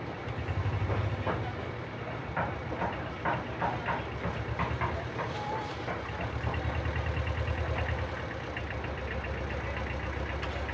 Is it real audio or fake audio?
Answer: real